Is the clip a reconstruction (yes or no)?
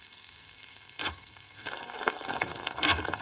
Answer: yes